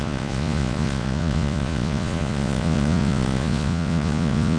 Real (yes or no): no